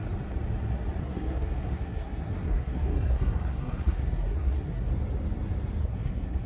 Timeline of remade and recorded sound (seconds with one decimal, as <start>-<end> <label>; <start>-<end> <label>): 0.0-1.0 recorded; 1.0-4.9 remade; 4.9-5.8 recorded; 5.8-6.5 remade